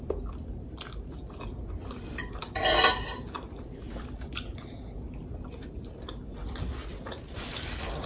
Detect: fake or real real